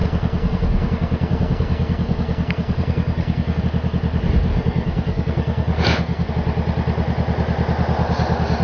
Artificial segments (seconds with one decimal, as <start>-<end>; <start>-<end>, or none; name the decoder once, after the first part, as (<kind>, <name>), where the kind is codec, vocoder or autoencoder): 0.0-3.6 (codec, SNAC); 4.5-6.3